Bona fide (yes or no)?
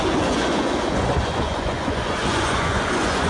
no